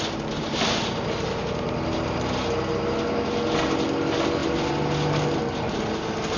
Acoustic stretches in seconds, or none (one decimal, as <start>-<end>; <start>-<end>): 0.0-6.4

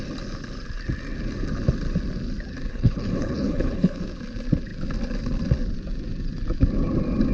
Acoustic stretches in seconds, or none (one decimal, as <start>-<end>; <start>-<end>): 0.0-2.7; 4.0-7.3

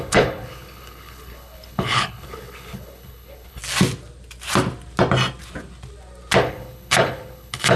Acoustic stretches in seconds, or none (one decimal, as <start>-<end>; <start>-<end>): 3.6-6.4

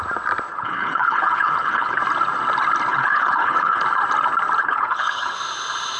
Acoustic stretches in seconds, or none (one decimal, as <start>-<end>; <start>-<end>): 0.0-0.5; 2.0-2.9; 3.8-4.6; 5.4-6.0

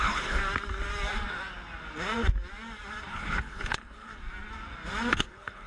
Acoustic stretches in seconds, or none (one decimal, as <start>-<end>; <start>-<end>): 0.4-3.1; 4.1-5.1

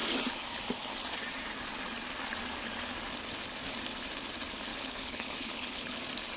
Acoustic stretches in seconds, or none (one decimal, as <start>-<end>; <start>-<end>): 0.0-4.7; 6.0-6.4

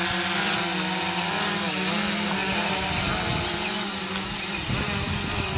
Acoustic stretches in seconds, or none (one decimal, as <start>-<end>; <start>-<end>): 0.0-5.6

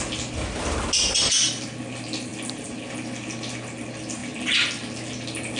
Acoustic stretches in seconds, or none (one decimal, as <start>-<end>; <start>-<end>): 0.0-5.6